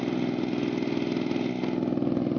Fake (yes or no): no